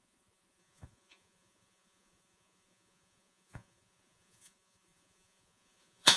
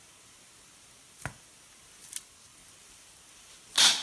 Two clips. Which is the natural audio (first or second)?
second